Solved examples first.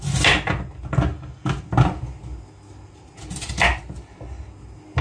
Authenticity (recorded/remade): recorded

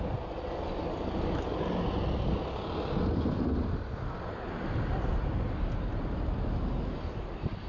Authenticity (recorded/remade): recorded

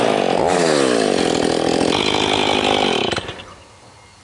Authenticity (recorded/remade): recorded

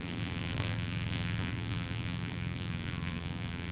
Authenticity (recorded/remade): remade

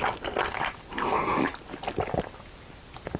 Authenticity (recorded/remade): recorded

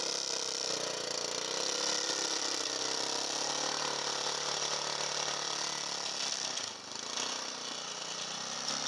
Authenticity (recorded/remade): recorded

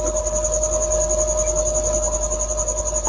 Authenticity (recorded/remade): recorded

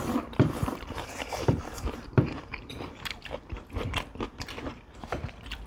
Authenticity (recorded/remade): remade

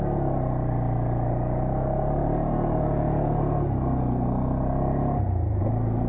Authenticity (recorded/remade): recorded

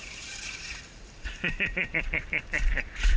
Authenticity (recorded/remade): remade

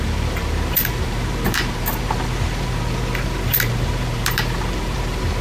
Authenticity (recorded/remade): remade